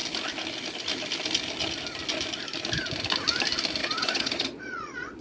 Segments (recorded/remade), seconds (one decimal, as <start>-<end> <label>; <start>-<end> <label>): 0.0-3.8 recorded; 3.8-5.2 remade